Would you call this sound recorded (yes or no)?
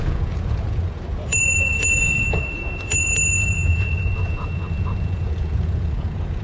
no